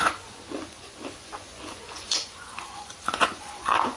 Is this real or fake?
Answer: fake